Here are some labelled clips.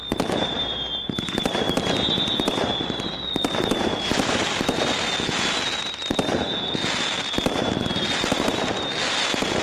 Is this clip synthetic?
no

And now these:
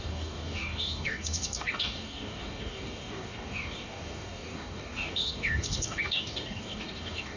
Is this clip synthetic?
yes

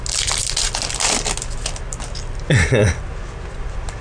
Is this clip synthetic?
no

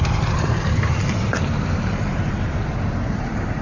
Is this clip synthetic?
yes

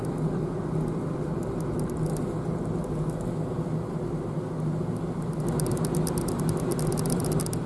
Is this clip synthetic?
no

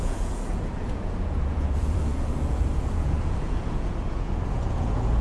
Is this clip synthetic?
yes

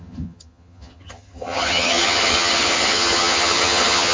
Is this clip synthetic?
yes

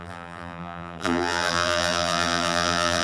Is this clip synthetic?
yes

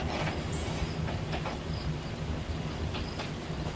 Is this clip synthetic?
no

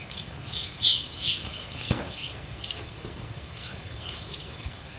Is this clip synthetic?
yes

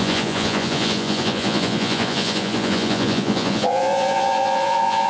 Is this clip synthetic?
yes